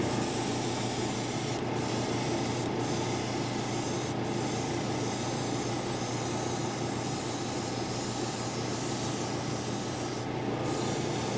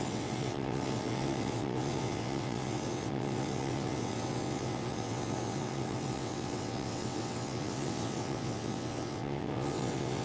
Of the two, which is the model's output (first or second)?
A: second